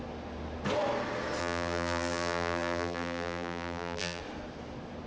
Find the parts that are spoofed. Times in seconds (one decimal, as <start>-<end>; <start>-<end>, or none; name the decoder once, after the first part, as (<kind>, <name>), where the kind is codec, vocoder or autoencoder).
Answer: 1.4-4.2 (vocoder, BigVGAN v2)